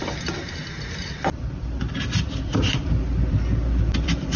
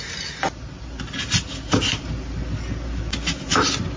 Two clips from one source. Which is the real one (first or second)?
second